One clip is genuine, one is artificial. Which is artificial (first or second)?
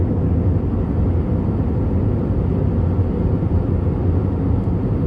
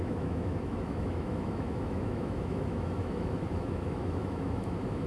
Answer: second